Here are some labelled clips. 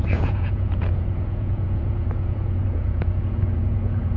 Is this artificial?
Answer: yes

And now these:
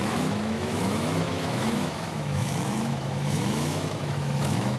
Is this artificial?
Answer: yes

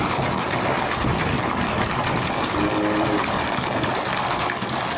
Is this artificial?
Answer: no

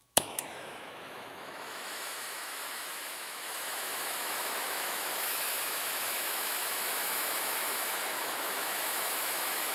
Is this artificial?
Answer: yes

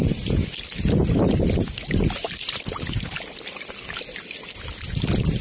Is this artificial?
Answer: no